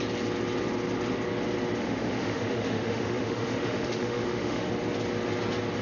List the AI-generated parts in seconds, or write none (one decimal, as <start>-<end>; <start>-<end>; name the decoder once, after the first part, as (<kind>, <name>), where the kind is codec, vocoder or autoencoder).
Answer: 1.8-4.7 (autoencoder, DAC-VAE)